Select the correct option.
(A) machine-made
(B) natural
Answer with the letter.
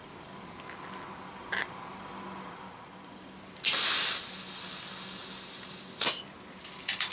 B